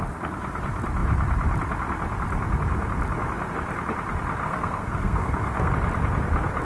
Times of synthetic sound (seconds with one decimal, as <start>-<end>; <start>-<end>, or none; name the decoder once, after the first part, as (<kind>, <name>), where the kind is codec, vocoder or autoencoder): 4.4-5.7 (codec, SNAC)